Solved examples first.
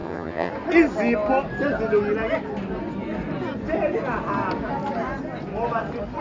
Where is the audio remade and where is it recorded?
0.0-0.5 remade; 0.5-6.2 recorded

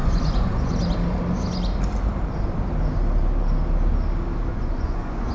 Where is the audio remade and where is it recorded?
0.0-0.7 remade; 0.7-4.5 recorded; 4.5-5.3 remade

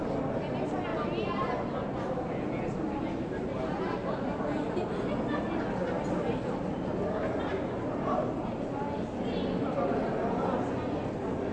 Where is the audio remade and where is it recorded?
0.0-11.5 recorded

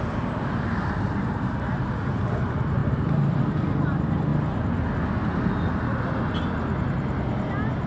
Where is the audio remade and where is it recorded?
0.0-7.9 recorded

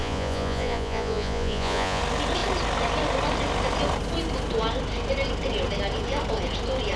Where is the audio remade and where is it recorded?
0.0-2.0 remade; 2.0-7.0 recorded

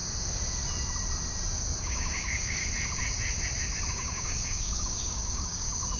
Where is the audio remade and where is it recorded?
0.0-1.8 recorded; 1.8-2.6 remade; 2.6-3.9 recorded; 3.9-6.0 remade

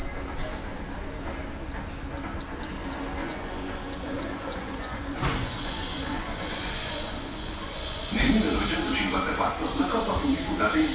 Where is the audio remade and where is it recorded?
0.0-3.2 recorded; 3.2-8.3 remade; 8.3-10.9 recorded